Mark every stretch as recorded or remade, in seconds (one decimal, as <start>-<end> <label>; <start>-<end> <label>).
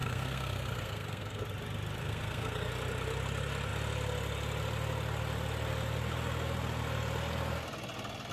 0.0-1.4 remade; 1.4-2.0 recorded; 2.0-2.7 remade; 2.7-8.3 recorded